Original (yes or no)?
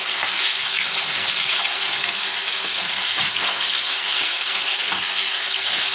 no